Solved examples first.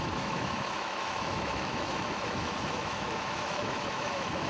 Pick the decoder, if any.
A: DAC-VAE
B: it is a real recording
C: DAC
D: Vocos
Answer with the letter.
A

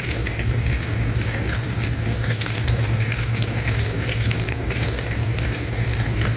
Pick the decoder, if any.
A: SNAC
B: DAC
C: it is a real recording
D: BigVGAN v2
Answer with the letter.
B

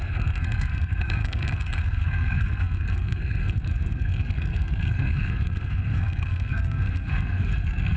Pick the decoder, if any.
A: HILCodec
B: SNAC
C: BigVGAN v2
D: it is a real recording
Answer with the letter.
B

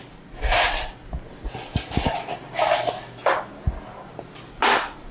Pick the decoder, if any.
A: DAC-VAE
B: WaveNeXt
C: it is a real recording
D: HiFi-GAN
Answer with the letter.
C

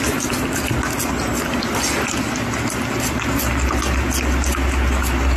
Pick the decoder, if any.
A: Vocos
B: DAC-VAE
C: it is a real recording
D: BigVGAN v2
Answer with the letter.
C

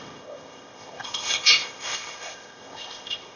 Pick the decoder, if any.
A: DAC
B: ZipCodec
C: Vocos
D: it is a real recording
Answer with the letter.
B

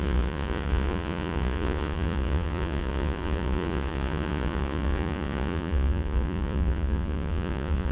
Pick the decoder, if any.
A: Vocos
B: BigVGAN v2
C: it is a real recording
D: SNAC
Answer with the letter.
A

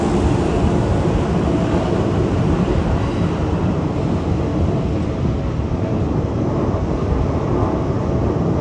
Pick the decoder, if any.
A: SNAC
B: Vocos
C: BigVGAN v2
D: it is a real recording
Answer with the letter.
D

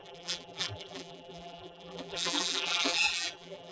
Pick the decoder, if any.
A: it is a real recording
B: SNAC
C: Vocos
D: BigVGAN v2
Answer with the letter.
D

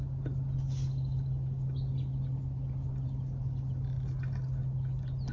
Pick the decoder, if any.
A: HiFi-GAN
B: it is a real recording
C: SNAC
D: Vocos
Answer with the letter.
B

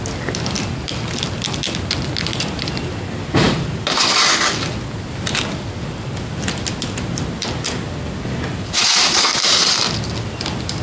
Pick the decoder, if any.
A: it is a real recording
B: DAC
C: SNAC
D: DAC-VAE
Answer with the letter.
A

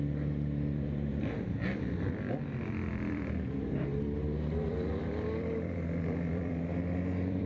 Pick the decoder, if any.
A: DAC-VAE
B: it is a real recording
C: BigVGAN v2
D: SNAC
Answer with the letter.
C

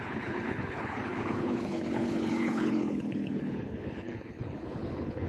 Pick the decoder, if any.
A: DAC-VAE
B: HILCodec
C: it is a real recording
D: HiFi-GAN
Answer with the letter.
B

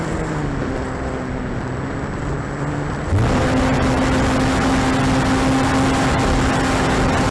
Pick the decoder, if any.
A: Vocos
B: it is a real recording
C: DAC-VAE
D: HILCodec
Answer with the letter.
B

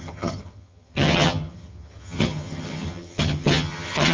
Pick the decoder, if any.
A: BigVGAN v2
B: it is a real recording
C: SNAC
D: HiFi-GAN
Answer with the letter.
D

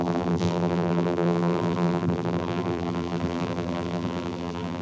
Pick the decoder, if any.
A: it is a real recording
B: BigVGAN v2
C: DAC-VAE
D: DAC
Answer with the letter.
B